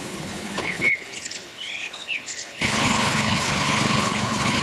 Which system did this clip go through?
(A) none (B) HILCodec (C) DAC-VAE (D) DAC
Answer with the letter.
B